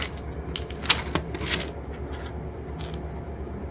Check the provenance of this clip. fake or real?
real